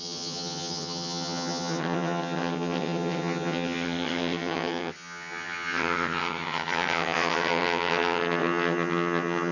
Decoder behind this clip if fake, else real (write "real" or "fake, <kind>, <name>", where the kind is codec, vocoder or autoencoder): fake, vocoder, HiFi-GAN